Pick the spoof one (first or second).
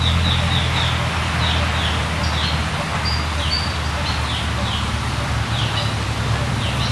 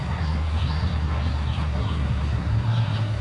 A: second